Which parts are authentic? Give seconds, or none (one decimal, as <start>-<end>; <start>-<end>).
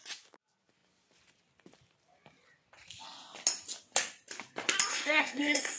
0.0-4.9